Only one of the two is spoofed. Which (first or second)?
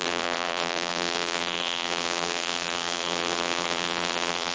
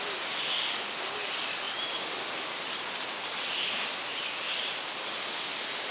first